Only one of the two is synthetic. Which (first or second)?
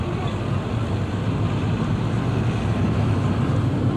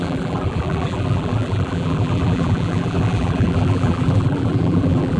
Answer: second